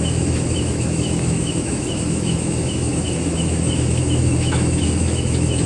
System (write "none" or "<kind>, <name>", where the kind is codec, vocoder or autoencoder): autoencoder, DAC-VAE